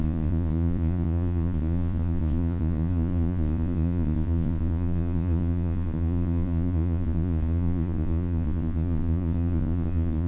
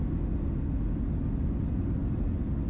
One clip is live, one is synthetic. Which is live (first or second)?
second